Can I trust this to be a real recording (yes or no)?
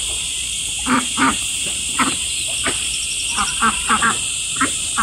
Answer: no